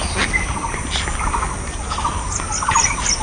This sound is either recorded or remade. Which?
recorded